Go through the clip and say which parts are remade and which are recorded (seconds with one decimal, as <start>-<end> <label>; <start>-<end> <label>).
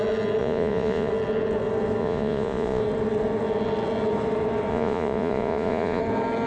0.0-0.4 recorded; 0.4-1.1 remade; 1.1-2.0 recorded; 2.0-2.8 remade; 2.8-4.7 recorded; 4.7-6.0 remade; 6.0-6.5 recorded